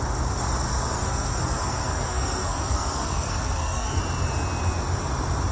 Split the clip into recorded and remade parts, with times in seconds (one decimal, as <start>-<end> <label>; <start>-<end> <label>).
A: 0.0-0.7 recorded; 0.7-4.0 remade; 4.0-5.5 recorded